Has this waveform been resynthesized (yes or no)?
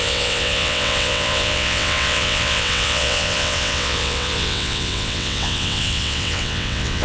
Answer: yes